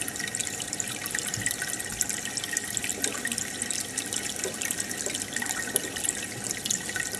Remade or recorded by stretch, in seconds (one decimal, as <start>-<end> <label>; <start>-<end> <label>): 0.0-0.4 recorded; 0.4-1.5 remade; 1.5-7.2 recorded